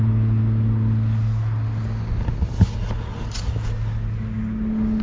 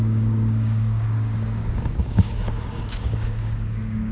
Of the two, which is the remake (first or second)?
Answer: second